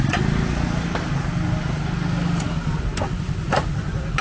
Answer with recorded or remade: recorded